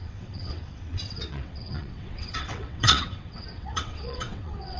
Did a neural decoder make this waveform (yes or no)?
yes